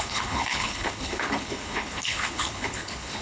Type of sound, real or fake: fake